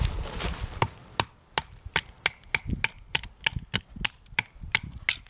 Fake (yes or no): no